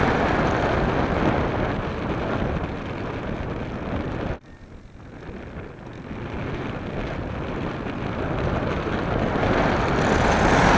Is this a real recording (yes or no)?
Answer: yes